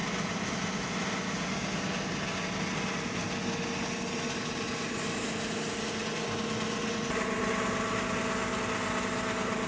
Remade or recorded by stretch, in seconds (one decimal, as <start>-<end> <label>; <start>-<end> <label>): 0.0-9.7 recorded